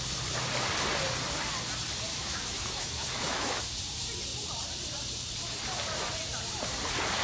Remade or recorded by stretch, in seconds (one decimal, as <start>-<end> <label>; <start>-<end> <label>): 0.0-2.1 recorded; 2.1-3.6 remade; 3.6-7.2 recorded